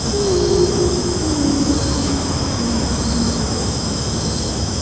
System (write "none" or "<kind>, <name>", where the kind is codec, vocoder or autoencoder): autoencoder, DAC-VAE